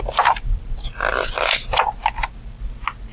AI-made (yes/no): no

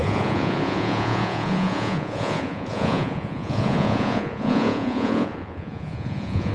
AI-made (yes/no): yes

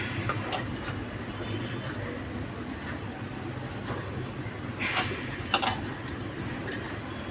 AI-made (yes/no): no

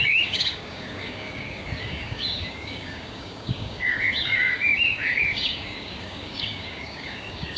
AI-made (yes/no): yes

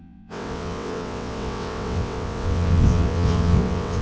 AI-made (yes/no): yes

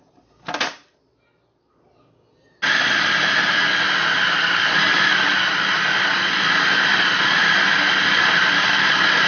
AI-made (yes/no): no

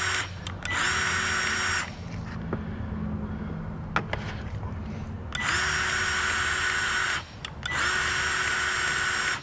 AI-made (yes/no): no